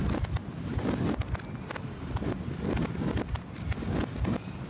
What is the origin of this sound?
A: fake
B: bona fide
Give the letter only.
B